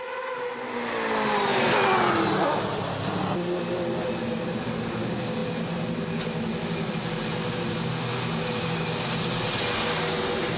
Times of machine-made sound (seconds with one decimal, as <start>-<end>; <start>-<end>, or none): none